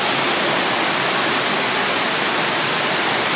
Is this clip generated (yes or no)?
no